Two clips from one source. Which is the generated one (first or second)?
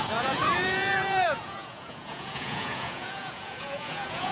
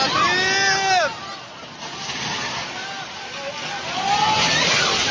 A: first